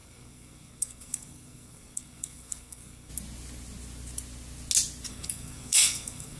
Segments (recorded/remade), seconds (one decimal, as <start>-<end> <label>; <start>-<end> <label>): 0.0-3.1 remade; 3.1-5.1 recorded; 5.1-6.4 remade